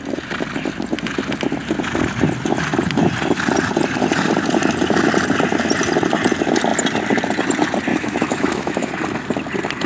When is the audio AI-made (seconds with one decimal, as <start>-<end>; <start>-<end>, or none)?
7.9-8.9